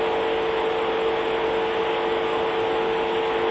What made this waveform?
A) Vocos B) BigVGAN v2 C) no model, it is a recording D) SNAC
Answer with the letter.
C